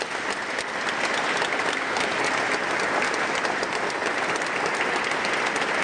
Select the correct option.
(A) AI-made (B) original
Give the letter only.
B